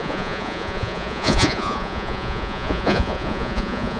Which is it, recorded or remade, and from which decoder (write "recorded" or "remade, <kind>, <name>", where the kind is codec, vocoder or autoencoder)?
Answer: remade, vocoder, Vocos